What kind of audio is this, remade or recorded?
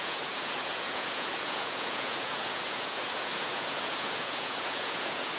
remade